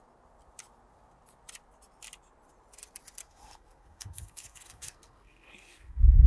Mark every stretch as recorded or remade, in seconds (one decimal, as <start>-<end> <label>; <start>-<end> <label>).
0.0-3.2 recorded; 3.2-6.3 remade